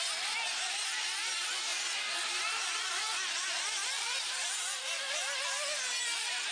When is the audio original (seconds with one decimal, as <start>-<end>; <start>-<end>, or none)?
0.0-1.7; 4.5-6.5